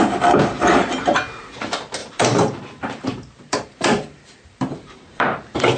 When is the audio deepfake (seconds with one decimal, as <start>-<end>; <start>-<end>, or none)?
2.0-5.8